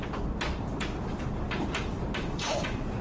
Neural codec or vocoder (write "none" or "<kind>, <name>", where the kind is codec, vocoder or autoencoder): vocoder, BigVGAN v2